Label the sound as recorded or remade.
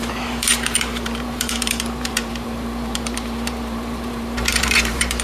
remade